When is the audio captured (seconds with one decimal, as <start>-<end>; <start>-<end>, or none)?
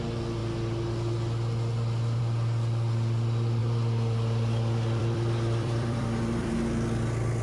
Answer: 0.0-3.6; 6.5-7.4